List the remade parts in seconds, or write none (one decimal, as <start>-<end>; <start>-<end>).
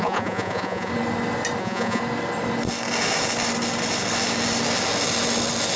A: 0.0-0.9; 1.6-2.0